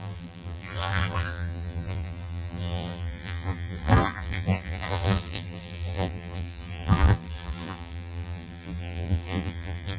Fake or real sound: fake